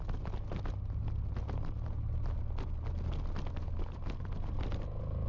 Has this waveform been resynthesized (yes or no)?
no